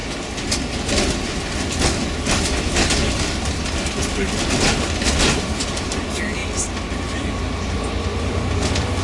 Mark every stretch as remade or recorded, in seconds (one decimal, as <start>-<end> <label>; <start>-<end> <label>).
0.0-9.0 recorded